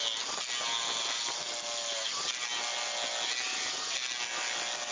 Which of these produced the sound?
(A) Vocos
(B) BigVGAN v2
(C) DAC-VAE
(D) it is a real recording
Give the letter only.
D